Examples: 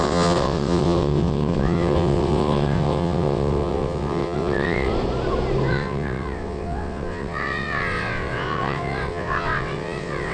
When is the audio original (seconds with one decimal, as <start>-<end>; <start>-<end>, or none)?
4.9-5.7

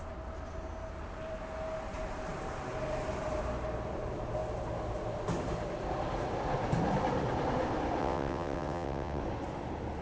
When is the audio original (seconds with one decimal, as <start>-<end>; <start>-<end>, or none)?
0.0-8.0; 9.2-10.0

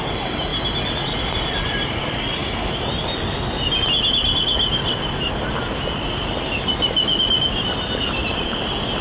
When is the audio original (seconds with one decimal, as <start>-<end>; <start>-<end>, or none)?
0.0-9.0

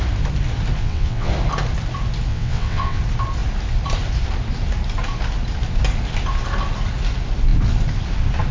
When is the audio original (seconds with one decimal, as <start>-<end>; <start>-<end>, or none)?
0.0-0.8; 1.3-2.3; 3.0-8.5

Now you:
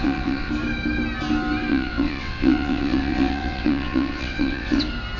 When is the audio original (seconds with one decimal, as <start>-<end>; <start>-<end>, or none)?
0.5-1.7; 4.8-5.2

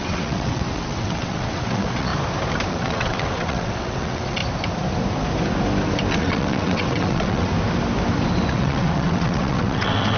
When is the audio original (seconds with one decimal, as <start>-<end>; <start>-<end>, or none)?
2.1-2.7; 4.4-6.1; 7.5-8.5